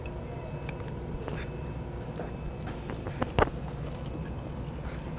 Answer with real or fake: real